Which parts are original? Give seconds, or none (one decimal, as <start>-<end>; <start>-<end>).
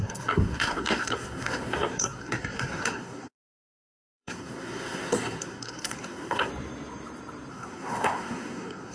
6.5-7.5